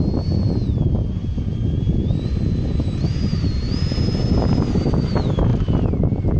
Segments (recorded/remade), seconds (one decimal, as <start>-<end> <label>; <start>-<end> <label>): 0.0-6.4 recorded